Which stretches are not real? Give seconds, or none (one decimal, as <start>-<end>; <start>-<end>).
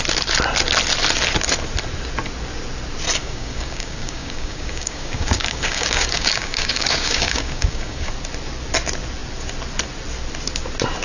3.2-8.1